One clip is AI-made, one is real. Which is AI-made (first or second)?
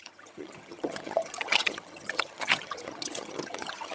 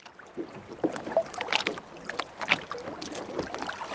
first